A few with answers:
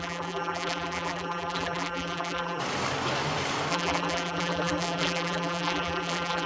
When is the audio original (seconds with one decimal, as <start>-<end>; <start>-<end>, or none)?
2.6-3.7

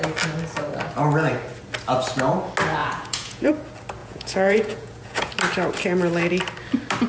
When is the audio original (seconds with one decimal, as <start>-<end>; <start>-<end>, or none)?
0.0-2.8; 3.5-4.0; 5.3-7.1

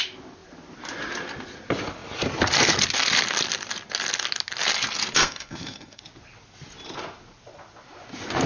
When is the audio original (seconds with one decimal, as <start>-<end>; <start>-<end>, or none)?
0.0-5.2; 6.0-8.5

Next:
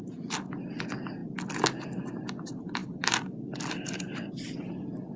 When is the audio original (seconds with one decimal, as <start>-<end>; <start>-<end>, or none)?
0.0-5.2

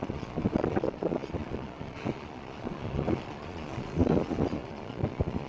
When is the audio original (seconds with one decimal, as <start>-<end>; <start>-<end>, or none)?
none